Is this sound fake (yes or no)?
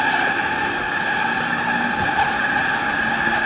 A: no